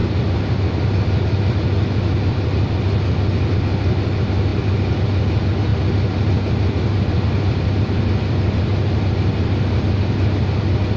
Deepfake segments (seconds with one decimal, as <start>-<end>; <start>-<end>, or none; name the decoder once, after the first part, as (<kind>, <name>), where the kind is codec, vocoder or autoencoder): none